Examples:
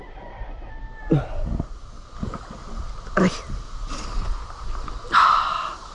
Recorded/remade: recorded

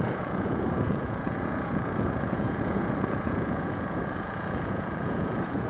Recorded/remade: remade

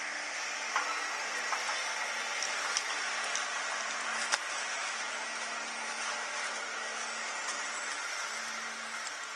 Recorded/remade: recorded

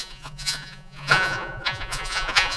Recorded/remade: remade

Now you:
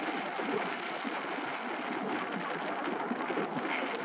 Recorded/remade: recorded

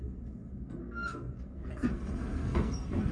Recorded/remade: remade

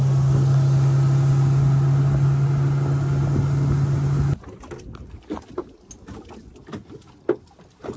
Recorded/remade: recorded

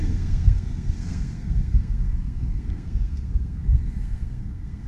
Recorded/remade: remade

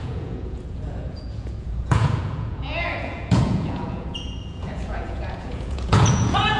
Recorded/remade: remade